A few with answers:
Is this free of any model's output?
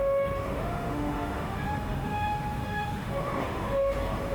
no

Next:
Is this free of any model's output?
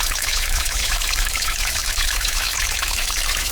no